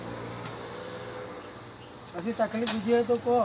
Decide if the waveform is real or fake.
real